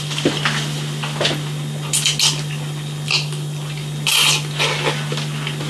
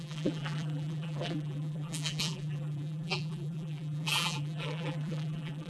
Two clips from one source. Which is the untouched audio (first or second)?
first